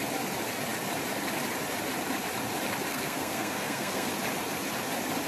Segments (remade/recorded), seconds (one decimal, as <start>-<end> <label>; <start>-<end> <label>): 0.0-2.9 recorded; 2.9-4.1 remade; 4.1-5.3 recorded